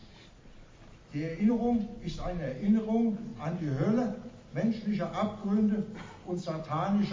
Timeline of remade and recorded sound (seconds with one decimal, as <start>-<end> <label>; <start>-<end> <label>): 0.0-7.1 recorded